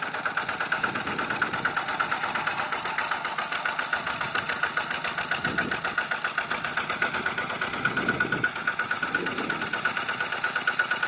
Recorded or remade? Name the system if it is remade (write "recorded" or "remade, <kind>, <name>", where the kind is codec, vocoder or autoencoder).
recorded